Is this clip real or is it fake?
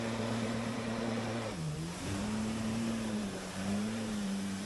fake